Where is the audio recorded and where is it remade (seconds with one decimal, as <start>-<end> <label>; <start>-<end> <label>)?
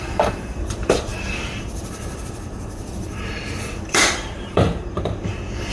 0.0-5.7 remade